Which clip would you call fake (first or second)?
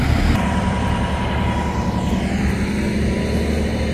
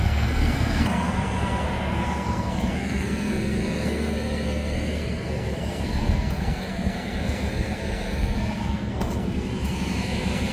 second